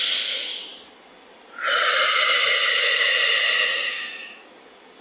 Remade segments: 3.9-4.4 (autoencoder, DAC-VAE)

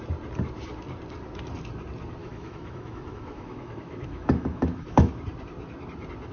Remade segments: 2.2-5.1 (autoencoder, DAC-VAE)

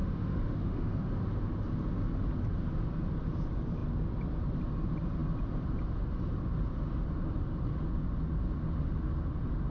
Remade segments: 0.0-1.1 (autoencoder, DAC-VAE)